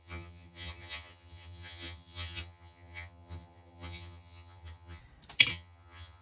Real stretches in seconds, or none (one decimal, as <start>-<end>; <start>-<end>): 5.0-5.5